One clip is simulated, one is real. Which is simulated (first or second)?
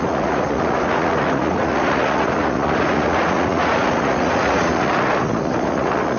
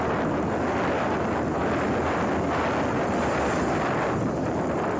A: first